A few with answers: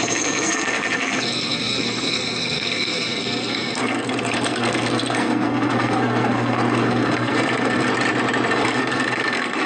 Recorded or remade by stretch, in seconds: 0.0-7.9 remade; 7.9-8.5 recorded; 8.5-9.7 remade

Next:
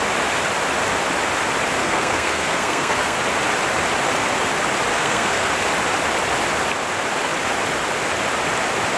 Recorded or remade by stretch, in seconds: 0.0-1.8 recorded; 1.8-3.2 remade; 3.2-4.9 recorded; 4.9-5.5 remade; 5.5-9.0 recorded

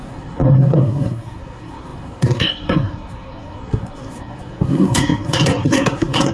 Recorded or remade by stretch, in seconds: 0.0-6.3 remade

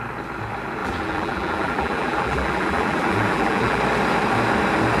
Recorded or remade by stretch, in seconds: 0.0-0.8 recorded; 0.8-3.8 remade; 3.8-5.0 recorded

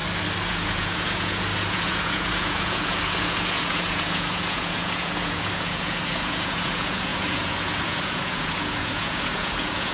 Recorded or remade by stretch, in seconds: 0.0-0.5 recorded; 0.5-9.9 remade